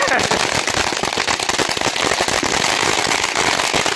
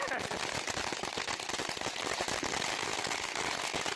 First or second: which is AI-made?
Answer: second